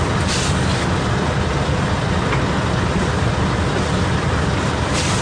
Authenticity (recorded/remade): recorded